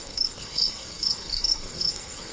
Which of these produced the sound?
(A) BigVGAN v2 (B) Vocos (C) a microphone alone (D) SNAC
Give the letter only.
D